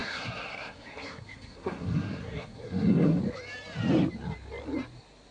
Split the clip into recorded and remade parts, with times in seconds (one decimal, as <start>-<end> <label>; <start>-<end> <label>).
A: 0.0-3.2 remade; 3.2-5.3 recorded